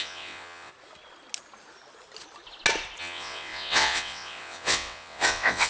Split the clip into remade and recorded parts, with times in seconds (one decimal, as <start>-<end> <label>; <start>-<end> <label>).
0.0-0.7 remade; 0.7-3.0 recorded; 3.0-5.7 remade